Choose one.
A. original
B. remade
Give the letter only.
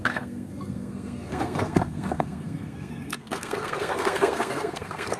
B